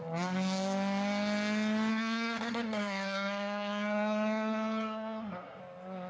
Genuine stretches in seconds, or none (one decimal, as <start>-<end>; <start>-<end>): 0.0-1.9; 5.6-6.1